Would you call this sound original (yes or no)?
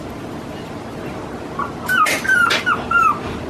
yes